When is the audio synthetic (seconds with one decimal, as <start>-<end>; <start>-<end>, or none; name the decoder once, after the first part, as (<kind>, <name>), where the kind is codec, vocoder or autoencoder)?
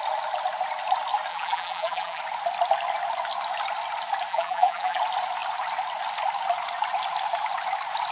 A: 1.3-2.2 (vocoder, BigVGAN v2); 4.3-5.0